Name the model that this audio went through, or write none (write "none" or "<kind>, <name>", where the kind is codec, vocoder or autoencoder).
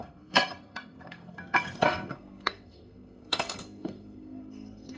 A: codec, SNAC